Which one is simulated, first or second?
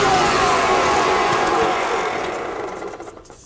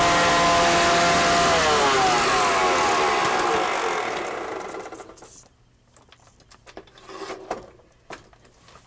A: first